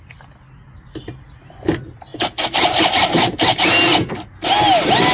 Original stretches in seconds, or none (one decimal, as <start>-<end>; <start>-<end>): 0.0-5.1